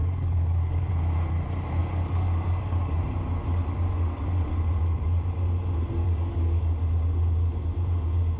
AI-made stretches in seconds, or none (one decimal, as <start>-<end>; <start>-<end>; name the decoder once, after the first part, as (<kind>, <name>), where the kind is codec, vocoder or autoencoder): 0.0-0.9 (codec, DAC); 1.8-3.0; 6.0-6.6